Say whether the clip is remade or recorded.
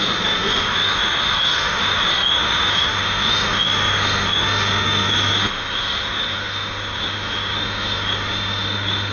remade